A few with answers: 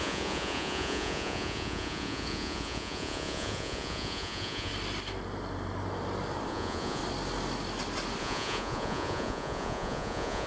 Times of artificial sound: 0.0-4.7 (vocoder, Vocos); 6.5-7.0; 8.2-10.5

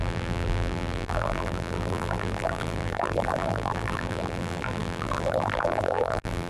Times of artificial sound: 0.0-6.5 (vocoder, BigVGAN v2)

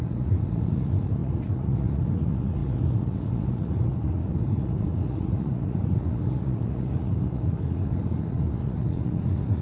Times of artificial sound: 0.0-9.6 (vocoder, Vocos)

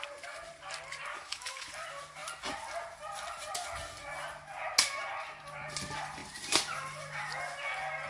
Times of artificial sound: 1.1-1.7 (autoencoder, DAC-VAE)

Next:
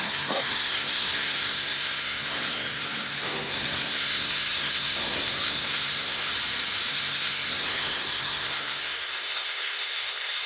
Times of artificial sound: 0.0-6.3 (codec, SNAC); 6.9-10.5

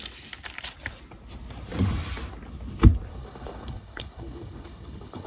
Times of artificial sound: 3.1-5.3 (codec, HILCodec)

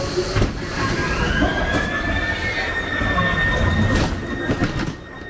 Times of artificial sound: none

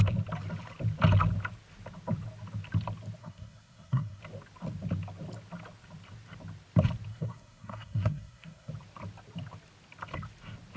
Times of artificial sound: 3.2-4.2 (codec, SNAC); 7.1-8.7